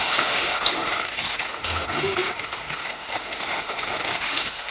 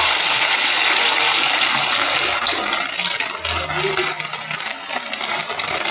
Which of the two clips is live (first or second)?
second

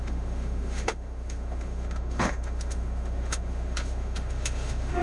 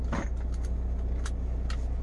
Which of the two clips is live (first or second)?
second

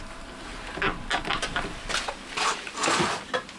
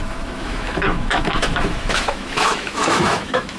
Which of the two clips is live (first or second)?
first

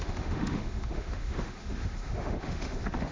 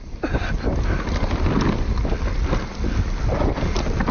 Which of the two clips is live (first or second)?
second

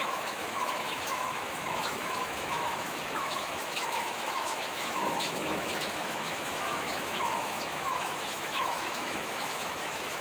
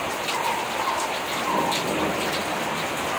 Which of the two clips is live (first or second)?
second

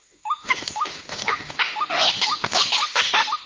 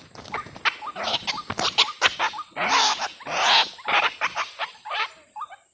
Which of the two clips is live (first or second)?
second